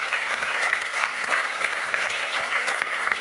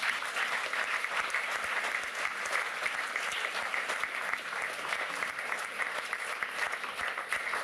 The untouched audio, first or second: second